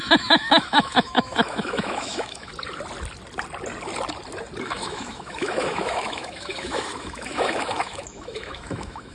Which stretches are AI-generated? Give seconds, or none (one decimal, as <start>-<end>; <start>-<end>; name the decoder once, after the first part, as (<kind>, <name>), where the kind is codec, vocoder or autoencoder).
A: 0.0-2.5 (autoencoder, DAC-VAE); 4.6-9.1